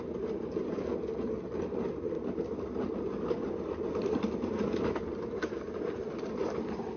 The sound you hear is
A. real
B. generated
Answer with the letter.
A